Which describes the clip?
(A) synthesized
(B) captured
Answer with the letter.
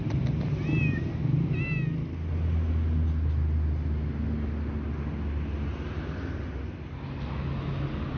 B